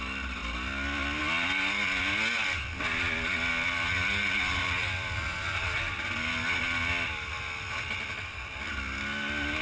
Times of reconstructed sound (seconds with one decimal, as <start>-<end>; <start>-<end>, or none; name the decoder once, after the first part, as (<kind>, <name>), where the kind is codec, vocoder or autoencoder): none